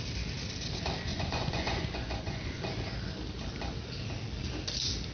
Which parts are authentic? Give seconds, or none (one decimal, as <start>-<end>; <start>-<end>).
0.0-1.1; 2.6-5.1